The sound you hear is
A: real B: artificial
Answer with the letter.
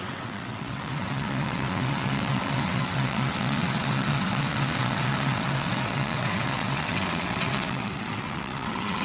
B